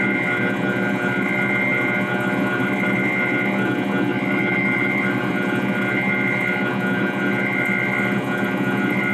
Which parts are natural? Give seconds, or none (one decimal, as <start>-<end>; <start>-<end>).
0.0-4.1; 5.3-9.1